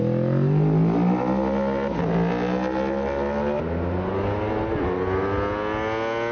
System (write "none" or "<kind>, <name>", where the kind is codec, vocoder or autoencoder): none